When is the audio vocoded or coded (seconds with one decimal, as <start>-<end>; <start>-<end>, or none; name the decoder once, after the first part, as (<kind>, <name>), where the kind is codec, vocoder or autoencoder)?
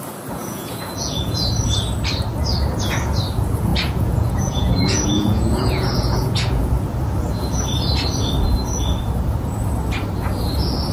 0.4-1.5 (vocoder, Vocos); 3.7-6.7